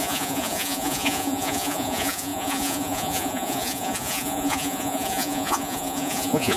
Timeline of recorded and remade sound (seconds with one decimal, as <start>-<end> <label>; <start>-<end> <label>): 0.0-6.6 remade

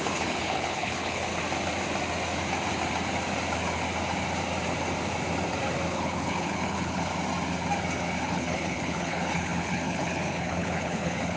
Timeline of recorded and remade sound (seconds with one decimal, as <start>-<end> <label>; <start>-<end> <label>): 0.0-1.3 remade; 1.3-5.9 recorded; 5.9-7.1 remade; 7.1-8.2 recorded; 8.2-11.4 remade

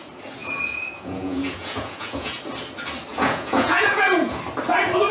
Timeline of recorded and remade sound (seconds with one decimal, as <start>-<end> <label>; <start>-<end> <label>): 0.0-0.4 recorded; 0.4-2.4 remade; 2.4-3.1 recorded; 3.1-4.4 remade; 4.4-5.1 recorded

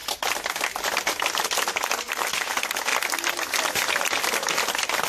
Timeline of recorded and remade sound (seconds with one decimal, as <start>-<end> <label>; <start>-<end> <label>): 0.0-1.0 remade; 1.0-5.1 recorded

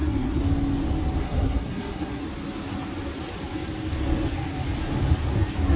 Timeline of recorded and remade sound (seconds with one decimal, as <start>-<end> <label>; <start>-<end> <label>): 0.0-0.4 remade; 0.4-1.2 recorded; 1.2-2.2 remade; 2.2-5.8 recorded

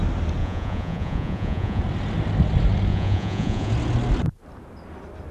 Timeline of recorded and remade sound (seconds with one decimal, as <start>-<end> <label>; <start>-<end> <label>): 0.0-0.4 recorded; 0.4-1.8 remade; 1.8-2.9 recorded; 2.9-3.7 remade; 3.7-5.3 recorded

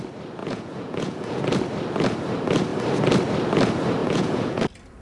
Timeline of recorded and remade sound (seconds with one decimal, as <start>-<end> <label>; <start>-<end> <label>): 0.0-0.4 recorded; 0.4-1.4 remade; 1.4-4.0 recorded; 4.0-4.6 remade; 4.6-5.0 recorded